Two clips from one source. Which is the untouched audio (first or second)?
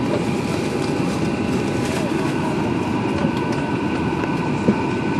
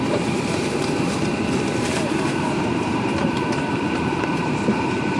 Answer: first